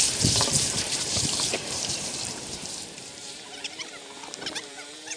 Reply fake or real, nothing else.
fake